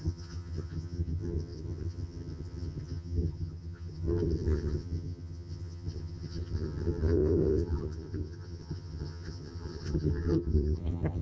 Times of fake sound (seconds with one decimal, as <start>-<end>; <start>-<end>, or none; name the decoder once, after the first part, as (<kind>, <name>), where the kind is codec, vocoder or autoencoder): 0.0-11.2 (vocoder, HiFi-GAN)